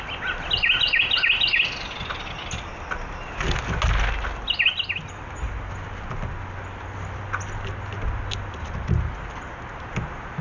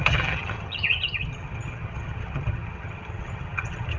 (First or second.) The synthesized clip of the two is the second